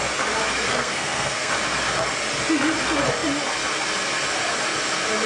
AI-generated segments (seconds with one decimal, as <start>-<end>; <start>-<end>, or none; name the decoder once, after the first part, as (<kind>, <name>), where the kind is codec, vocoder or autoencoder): 0.7-1.5 (codec, SNAC)